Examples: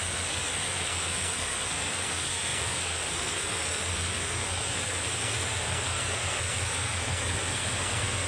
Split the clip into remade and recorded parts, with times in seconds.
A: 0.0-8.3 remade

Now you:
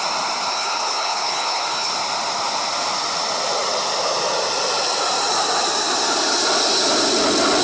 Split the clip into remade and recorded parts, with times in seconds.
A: 0.0-0.5 recorded; 0.5-1.9 remade; 1.9-7.6 recorded

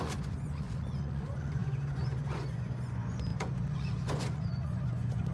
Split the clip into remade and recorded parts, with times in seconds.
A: 0.0-5.3 remade

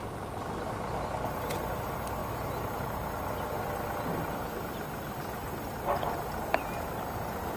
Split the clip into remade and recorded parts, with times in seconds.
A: 0.0-7.6 recorded

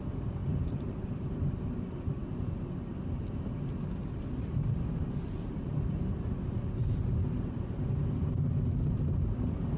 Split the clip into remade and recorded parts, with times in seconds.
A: 0.0-0.4 recorded; 0.4-1.5 remade; 1.5-9.8 recorded

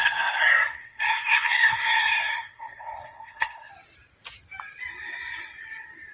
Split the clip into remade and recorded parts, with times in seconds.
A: 0.0-3.7 remade; 3.7-6.1 recorded

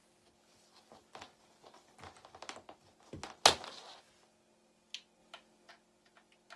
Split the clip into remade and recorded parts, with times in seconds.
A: 0.0-6.6 recorded